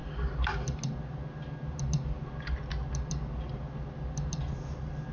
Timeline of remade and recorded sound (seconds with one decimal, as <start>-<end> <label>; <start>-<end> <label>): 0.0-5.1 recorded